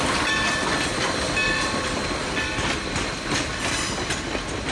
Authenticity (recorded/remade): recorded